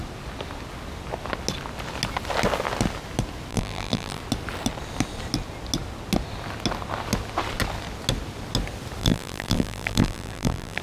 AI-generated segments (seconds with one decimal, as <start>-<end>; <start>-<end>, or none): 3.5-4.2; 9.0-10.8